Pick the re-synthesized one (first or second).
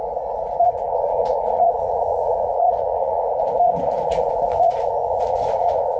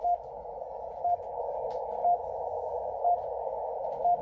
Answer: first